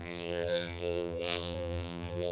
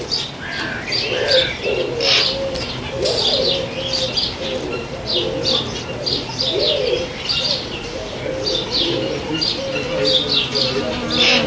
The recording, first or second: second